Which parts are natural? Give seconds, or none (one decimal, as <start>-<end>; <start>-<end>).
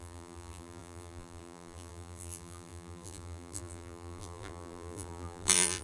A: none